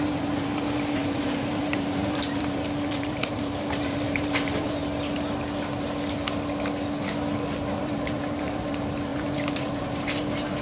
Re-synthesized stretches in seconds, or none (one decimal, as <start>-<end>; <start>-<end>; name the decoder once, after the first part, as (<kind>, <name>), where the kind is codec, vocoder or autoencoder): 0.0-4.8 (vocoder, BigVGAN v2); 7.8-10.6